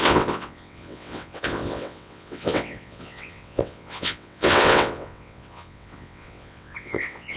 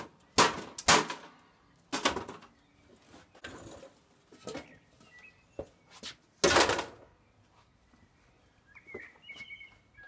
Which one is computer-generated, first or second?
first